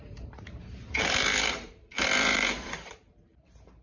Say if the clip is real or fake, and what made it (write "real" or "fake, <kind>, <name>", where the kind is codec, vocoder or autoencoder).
fake, vocoder, BigVGAN v2